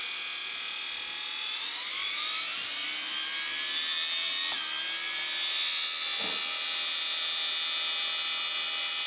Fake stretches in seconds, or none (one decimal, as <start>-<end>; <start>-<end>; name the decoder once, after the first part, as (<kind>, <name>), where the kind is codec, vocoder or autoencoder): none